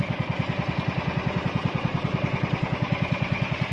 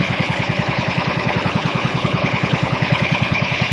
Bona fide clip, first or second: first